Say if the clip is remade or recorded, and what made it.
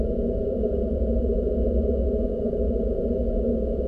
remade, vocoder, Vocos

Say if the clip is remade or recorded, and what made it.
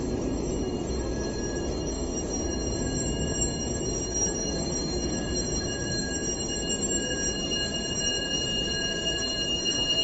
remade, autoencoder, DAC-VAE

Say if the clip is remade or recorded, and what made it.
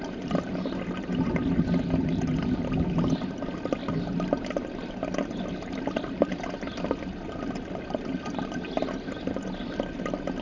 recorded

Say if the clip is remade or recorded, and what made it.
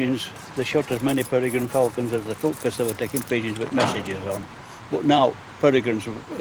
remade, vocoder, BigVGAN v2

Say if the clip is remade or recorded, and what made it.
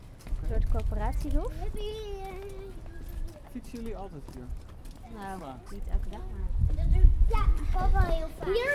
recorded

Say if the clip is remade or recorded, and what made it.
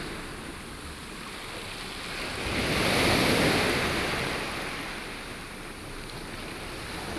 recorded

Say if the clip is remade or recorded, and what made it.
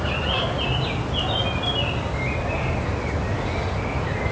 recorded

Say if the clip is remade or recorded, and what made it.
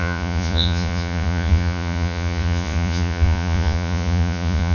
remade, vocoder, Vocos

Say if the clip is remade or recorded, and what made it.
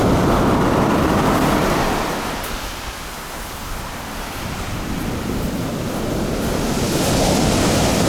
recorded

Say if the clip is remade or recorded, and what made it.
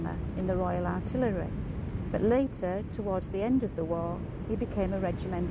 recorded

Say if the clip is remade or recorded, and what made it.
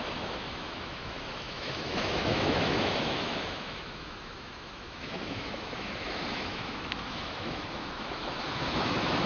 remade, autoencoder, DAC-VAE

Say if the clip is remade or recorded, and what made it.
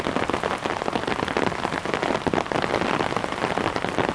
recorded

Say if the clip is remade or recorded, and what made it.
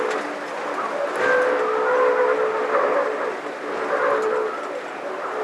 recorded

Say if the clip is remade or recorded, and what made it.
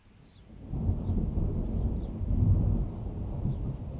recorded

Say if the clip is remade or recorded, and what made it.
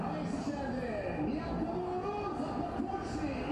recorded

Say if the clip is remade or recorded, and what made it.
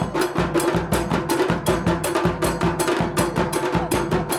recorded